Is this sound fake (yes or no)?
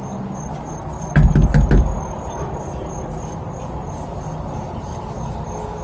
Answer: no